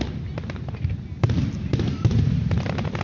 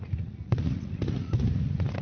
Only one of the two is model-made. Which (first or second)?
second